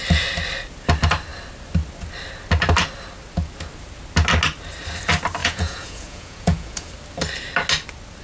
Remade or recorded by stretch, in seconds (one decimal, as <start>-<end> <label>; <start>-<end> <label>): 0.0-5.4 recorded; 5.4-6.9 remade; 6.9-8.2 recorded